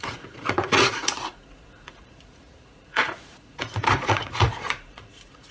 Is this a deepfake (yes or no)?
yes